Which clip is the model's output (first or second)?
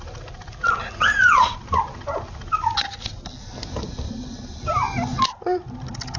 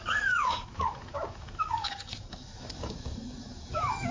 second